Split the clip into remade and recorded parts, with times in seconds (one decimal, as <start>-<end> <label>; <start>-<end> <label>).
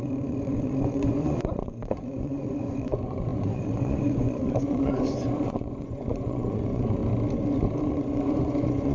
0.0-7.0 remade; 7.0-7.9 recorded; 7.9-8.9 remade